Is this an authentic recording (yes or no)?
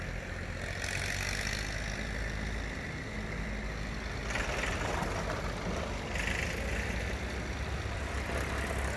yes